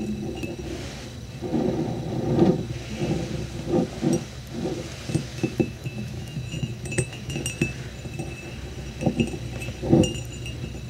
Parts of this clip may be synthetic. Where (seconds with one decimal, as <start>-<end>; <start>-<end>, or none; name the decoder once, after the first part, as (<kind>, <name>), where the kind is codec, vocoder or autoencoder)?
5.3-7.4 (autoencoder, DAC-VAE)